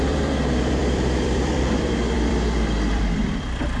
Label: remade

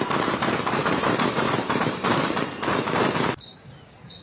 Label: remade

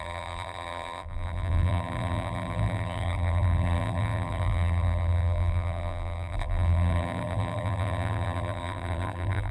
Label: remade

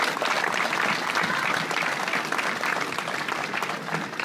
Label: recorded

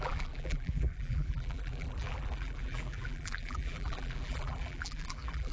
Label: remade